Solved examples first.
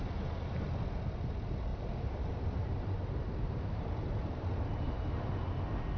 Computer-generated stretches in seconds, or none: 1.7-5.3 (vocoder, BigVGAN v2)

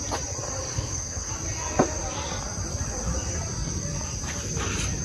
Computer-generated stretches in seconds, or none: 0.7-1.3 (codec, SNAC)

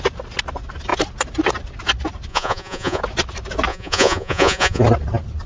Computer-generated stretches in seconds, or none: 2.3-3.0 (vocoder, Vocos); 3.7-4.8

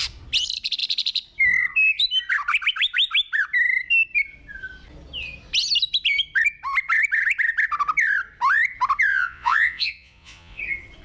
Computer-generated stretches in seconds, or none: 9.1-10.6 (vocoder, Vocos)

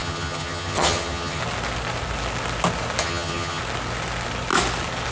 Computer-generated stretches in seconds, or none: 0.0-1.4 (vocoder, HiFi-GAN); 3.0-3.6

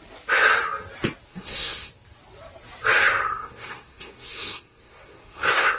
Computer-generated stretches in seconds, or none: 1.3-1.9 (codec, SNAC); 3.0-5.8

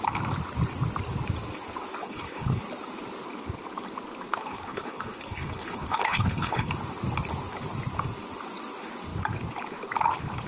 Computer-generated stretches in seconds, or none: 2.0-2.6 (codec, HILCodec); 4.3-6.7